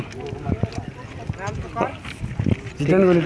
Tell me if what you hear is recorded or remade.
recorded